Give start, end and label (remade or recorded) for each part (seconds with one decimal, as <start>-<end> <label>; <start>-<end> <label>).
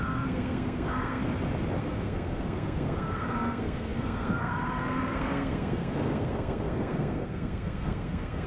0.0-1.2 remade; 1.2-1.8 recorded; 1.8-8.5 remade